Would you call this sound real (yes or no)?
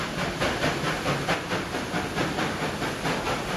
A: yes